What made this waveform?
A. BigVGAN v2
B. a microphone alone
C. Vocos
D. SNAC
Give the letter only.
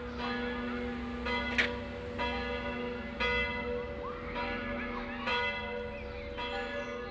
B